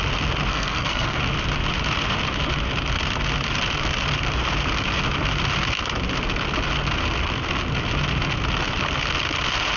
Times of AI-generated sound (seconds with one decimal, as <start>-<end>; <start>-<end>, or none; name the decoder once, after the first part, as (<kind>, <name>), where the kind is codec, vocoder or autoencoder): 0.5-1.2 (codec, SNAC)